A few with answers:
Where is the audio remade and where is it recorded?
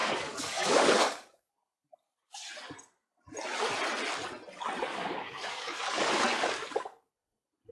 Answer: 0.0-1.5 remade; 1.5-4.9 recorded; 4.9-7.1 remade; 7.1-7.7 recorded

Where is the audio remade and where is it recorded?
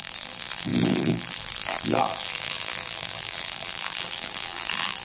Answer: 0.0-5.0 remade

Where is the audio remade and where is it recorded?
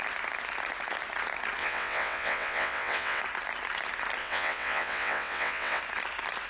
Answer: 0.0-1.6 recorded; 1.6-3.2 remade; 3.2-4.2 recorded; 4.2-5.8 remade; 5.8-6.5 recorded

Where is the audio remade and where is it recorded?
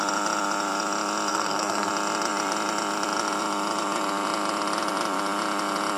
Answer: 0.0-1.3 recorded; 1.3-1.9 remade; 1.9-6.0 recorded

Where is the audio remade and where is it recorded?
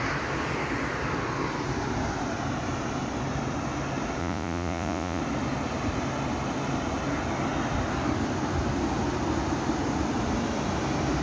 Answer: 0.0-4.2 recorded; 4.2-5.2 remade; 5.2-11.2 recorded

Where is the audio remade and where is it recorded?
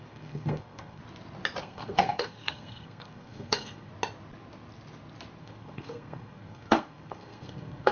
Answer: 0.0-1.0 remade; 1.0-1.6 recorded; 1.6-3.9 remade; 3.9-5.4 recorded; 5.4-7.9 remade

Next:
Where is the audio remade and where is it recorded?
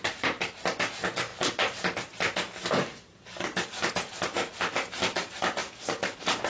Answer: 0.0-3.1 recorded; 3.1-4.5 remade; 4.5-5.6 recorded; 5.6-6.5 remade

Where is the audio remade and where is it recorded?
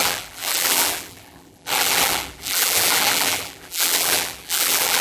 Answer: 0.0-5.0 remade